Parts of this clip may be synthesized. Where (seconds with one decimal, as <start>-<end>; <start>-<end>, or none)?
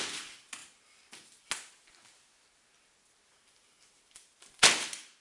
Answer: none